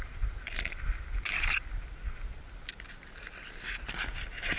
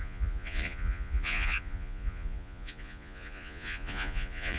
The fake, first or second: second